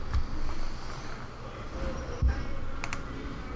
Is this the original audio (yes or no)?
yes